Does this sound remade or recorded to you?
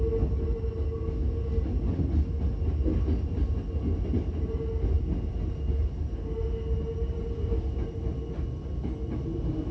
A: recorded